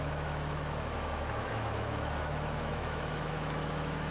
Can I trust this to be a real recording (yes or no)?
no